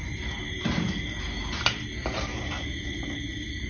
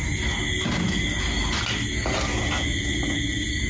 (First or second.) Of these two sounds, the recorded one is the second